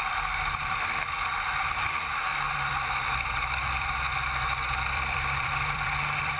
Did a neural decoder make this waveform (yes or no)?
yes